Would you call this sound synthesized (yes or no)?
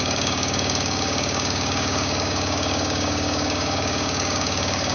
yes